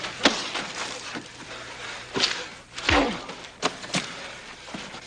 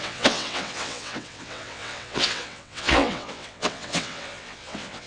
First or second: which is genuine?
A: first